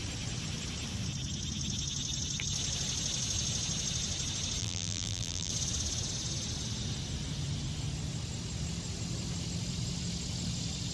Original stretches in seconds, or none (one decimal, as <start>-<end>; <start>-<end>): 0.0-4.6; 5.5-10.9